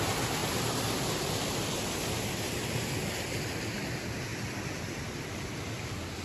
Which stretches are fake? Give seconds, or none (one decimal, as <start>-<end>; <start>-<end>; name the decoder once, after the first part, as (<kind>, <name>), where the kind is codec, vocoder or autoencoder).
0.4-3.4 (vocoder, BigVGAN v2); 4.3-5.4